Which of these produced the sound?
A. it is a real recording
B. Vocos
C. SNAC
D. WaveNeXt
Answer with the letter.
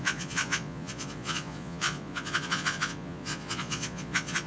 B